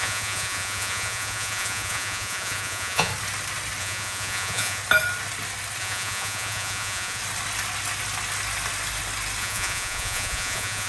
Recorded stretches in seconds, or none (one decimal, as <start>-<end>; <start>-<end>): 3.1-3.8; 4.8-5.8; 7.2-9.4